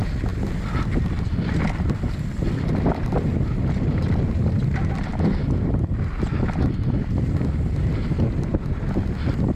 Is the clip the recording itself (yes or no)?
yes